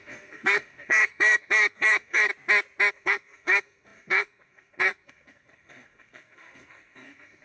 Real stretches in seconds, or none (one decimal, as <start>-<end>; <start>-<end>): 2.3-2.9